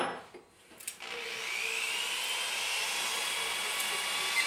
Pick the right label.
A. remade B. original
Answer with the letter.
B